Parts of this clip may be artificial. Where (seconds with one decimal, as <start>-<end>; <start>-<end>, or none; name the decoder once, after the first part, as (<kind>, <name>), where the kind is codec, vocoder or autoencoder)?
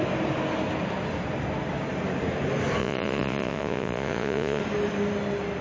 2.8-4.6 (vocoder, Vocos)